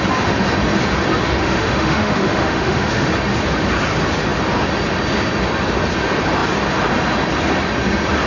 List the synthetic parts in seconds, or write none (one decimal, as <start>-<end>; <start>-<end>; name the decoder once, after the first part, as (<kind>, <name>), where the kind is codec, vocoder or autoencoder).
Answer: 1.4-3.1 (autoencoder, DAC-VAE)